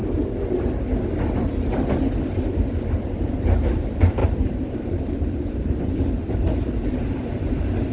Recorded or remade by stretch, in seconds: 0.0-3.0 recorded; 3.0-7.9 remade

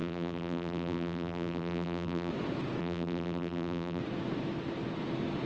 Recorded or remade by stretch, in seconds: 0.0-2.3 remade; 2.3-2.8 recorded; 2.8-4.0 remade; 4.0-5.5 recorded

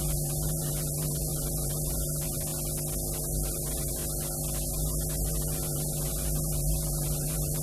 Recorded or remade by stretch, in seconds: 0.0-2.5 remade; 2.5-3.2 recorded; 3.2-4.0 remade; 4.0-4.7 recorded; 4.7-7.6 remade

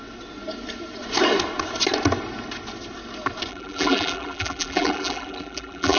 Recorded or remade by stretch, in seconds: 0.0-3.5 recorded; 3.5-6.0 remade

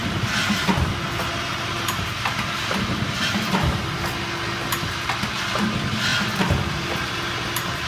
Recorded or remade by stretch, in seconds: 0.0-0.5 remade; 0.5-1.5 recorded; 1.5-3.9 remade; 3.9-7.9 recorded

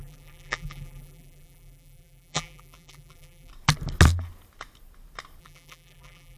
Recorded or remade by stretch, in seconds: 0.0-3.5 remade; 3.5-5.4 recorded; 5.4-6.4 remade

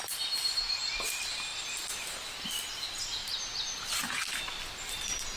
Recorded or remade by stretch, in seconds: 0.0-5.4 recorded

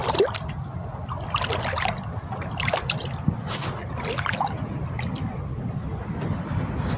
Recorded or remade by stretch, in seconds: 0.0-7.0 recorded